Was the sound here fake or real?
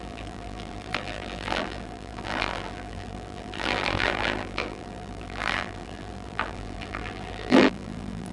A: fake